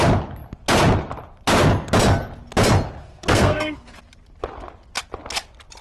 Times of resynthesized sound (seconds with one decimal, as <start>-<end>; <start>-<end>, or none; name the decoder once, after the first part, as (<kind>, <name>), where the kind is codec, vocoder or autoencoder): 3.0-4.0 (codec, SNAC)